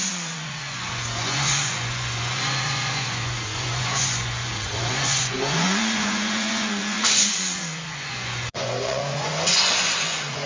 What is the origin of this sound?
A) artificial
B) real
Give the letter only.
A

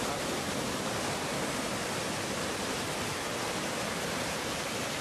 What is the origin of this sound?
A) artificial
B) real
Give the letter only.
B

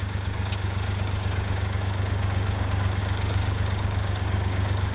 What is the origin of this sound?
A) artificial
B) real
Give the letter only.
A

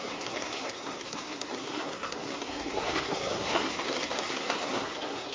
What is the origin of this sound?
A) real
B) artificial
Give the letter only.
B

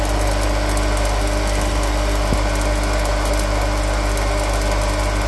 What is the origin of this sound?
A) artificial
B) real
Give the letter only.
B